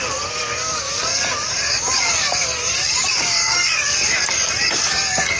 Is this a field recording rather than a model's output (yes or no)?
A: no